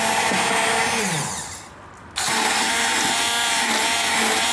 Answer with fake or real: real